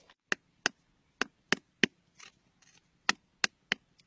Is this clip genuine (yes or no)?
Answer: yes